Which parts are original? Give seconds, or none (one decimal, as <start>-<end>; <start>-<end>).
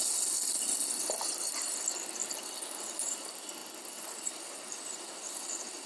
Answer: 1.0-3.6; 4.4-5.9